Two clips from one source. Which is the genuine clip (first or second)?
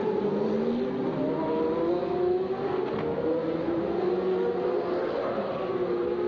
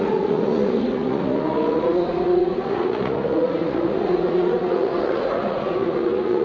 first